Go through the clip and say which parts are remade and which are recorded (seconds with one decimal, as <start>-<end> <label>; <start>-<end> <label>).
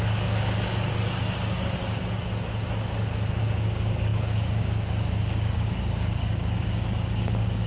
0.0-1.8 remade; 1.8-3.4 recorded; 3.4-7.7 remade